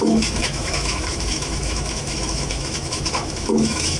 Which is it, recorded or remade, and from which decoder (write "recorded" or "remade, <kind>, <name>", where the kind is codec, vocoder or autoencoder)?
remade, autoencoder, DAC-VAE